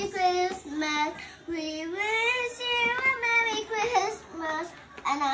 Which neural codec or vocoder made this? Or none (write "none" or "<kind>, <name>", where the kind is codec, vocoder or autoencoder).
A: none